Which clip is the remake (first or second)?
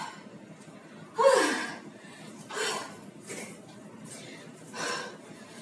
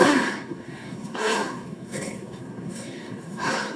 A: second